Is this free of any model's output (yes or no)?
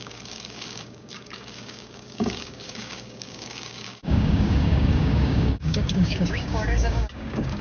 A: no